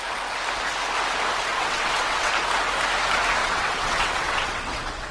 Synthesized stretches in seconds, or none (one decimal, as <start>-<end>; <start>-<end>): 1.5-2.3; 3.4-5.1